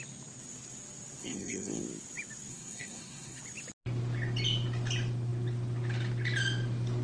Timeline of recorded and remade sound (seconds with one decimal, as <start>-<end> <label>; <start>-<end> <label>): 0.0-1.2 recorded; 1.2-1.8 remade; 1.8-2.5 recorded; 2.5-3.4 remade; 3.4-7.0 recorded